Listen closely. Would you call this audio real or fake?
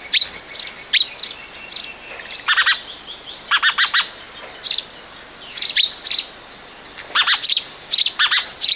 real